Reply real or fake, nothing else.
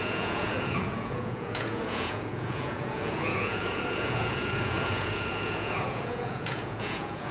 fake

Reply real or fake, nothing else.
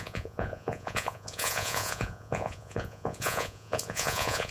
fake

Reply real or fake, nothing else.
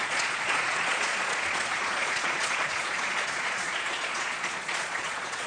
fake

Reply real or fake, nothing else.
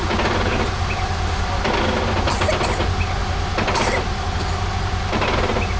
real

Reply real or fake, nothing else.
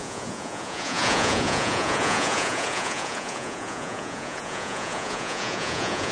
fake